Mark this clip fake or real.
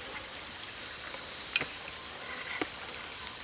real